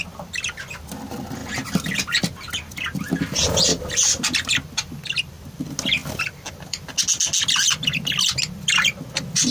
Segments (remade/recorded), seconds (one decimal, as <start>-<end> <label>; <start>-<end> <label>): 0.0-3.7 recorded; 3.7-4.2 remade; 4.2-6.0 recorded; 6.0-6.8 remade; 6.8-9.5 recorded